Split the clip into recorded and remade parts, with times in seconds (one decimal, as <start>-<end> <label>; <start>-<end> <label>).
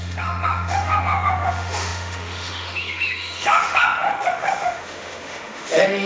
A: 0.0-6.1 remade